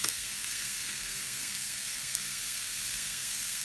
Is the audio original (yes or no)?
no